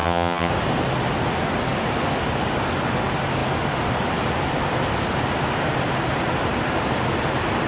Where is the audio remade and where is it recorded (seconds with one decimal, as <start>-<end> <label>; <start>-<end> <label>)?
0.0-0.5 remade; 0.5-7.7 recorded